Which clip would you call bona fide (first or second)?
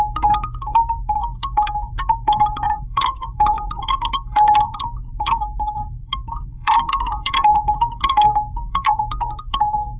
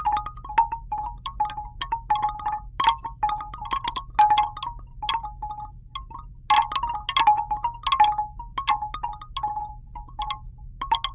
second